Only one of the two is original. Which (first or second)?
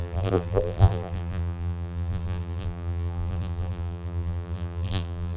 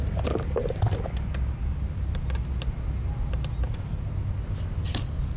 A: second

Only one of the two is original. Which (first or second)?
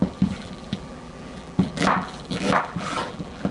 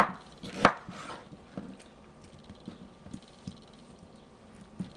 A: second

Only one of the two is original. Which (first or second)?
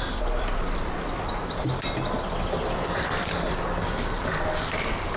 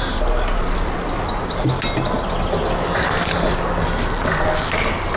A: second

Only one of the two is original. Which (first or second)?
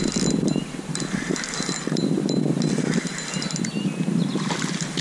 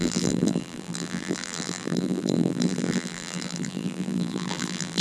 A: first